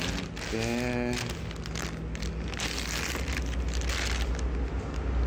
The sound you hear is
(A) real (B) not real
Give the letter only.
A